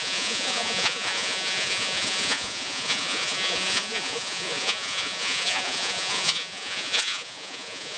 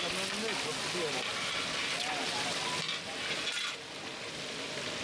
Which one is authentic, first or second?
second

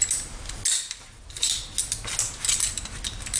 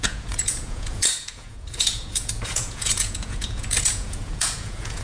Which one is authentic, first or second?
first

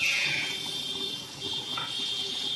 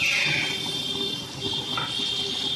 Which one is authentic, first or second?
second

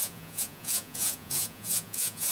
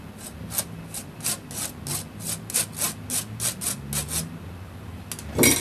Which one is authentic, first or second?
second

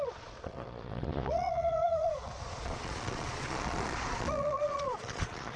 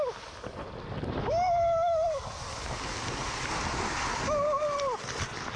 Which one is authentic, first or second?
second